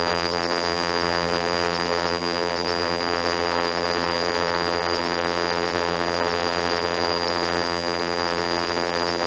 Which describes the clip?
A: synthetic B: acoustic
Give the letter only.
A